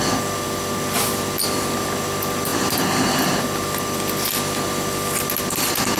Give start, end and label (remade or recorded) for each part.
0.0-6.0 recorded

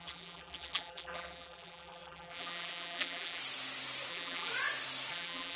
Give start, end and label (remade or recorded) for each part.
0.0-3.4 remade; 3.4-4.1 recorded; 4.1-4.5 remade; 4.5-5.1 recorded; 5.1-5.6 remade

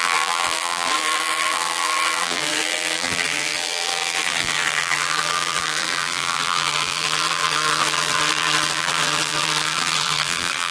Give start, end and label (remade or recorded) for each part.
0.0-10.7 remade

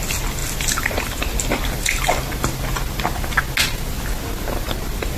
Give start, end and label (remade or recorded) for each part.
0.0-0.4 recorded; 0.4-3.4 remade; 3.4-5.2 recorded